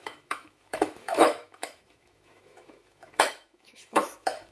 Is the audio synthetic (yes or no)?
yes